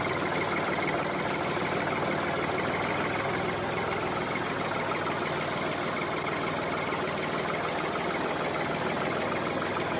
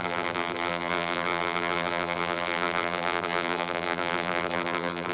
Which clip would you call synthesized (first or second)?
second